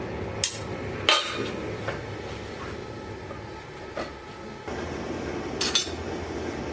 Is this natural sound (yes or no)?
yes